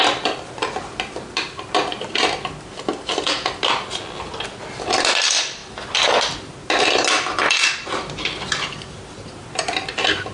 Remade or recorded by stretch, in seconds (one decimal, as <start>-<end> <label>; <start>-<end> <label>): 0.0-10.3 recorded